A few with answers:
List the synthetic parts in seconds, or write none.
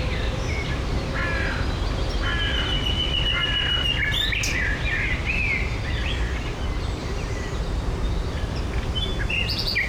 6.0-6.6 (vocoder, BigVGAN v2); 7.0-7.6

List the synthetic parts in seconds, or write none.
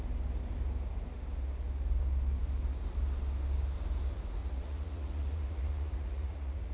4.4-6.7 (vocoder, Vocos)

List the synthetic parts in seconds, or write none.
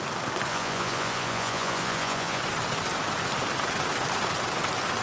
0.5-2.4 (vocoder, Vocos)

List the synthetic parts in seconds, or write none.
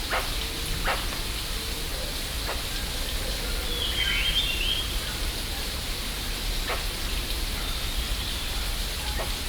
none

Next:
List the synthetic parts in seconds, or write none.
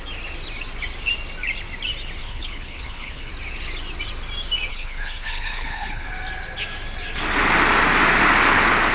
2.2-3.3 (codec, HILCodec); 4.7-6.1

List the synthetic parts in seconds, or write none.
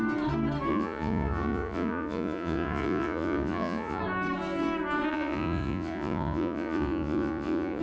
0.7-4.0 (vocoder, Vocos); 5.1-7.8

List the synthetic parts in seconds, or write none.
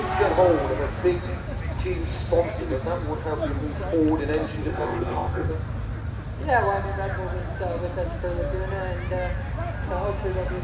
4.7-5.5 (codec, ZipCodec)